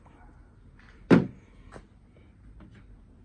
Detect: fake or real real